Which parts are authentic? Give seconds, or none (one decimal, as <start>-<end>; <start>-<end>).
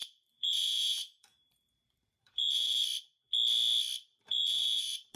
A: 2.8-4.1